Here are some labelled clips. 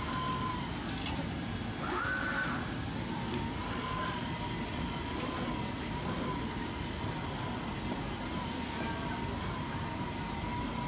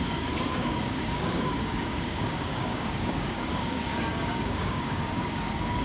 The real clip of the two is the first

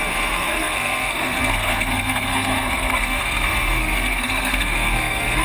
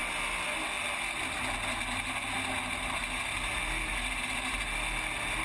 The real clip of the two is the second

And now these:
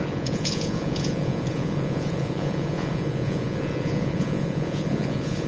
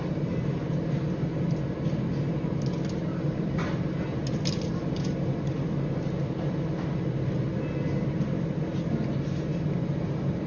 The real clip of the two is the second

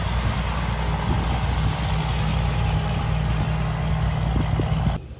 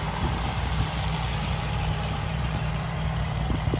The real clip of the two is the first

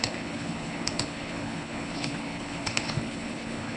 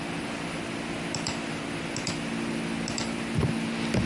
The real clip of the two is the second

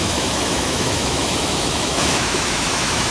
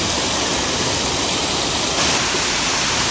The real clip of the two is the second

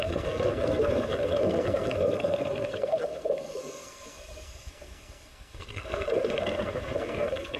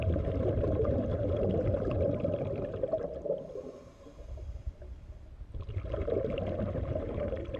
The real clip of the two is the second